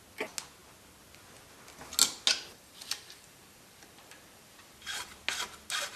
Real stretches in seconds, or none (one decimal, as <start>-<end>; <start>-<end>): 0.0-2.5; 5.1-6.0